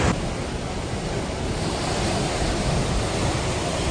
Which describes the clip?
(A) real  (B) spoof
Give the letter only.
A